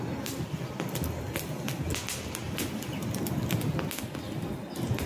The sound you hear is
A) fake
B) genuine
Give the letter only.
B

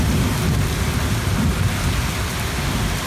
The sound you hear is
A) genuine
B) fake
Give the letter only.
A